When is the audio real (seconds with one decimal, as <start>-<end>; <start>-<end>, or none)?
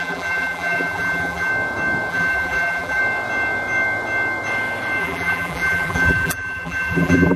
1.5-2.1; 3.0-5.0